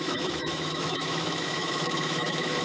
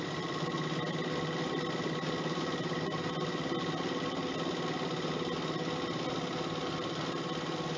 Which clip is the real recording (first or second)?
second